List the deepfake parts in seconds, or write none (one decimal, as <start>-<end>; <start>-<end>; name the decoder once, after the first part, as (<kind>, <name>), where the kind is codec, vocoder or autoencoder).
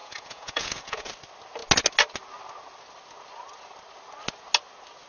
0.0-1.1 (vocoder, Vocos)